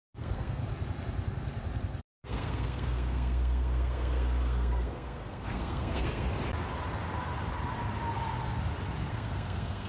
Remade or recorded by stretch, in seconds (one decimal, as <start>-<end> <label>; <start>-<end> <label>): 0.0-0.6 remade; 0.6-2.0 recorded; 2.0-6.3 remade; 6.3-9.1 recorded; 9.1-9.9 remade